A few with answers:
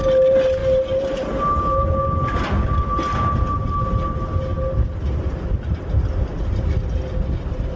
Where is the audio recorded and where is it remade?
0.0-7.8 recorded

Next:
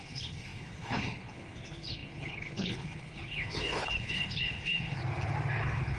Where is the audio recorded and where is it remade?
0.0-5.0 remade; 5.0-5.6 recorded; 5.6-6.0 remade

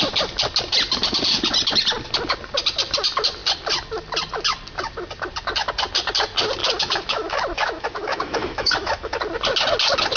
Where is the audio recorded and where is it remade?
0.0-6.6 recorded; 6.6-9.2 remade; 9.2-10.2 recorded

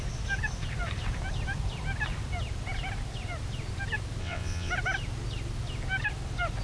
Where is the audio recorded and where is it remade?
0.0-4.2 recorded; 4.2-4.7 remade; 4.7-6.6 recorded

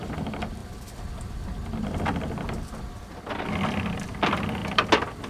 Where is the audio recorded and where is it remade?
0.0-5.3 recorded